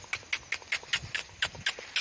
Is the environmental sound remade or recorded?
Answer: recorded